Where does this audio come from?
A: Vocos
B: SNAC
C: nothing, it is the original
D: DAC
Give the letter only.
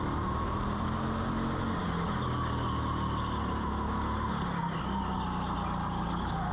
C